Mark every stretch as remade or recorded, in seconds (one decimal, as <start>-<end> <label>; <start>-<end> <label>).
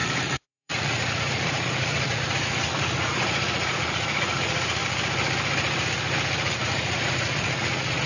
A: 0.0-4.8 remade; 4.8-6.5 recorded; 6.5-8.1 remade